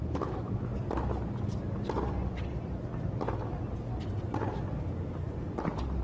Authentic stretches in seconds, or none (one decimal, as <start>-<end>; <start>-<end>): 0.8-6.0